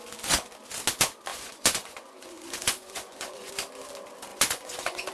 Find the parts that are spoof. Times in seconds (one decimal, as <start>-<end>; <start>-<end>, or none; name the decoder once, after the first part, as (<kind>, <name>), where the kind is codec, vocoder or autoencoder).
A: 1.3-3.5 (vocoder, Vocos); 4.3-5.1